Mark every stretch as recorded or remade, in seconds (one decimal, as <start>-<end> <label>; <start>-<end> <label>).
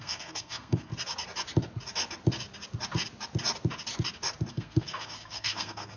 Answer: 0.0-0.9 remade; 0.9-4.5 recorded; 4.5-6.0 remade